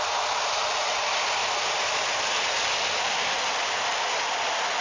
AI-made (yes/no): no